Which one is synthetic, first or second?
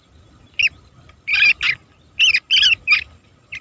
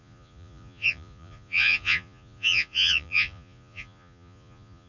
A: second